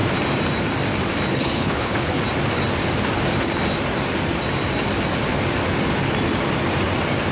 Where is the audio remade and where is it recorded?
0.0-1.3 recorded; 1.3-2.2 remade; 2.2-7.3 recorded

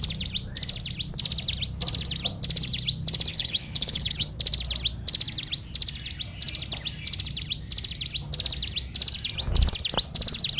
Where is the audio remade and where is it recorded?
0.0-3.3 recorded; 3.3-4.3 remade; 4.3-10.6 recorded